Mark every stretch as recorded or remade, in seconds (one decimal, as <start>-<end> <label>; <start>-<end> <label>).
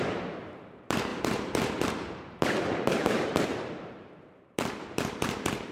0.0-5.7 remade